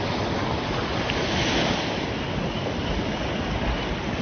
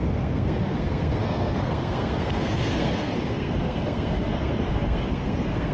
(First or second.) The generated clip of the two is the second